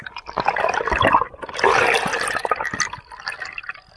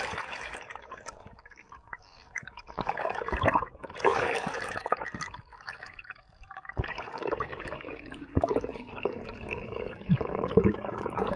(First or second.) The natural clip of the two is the first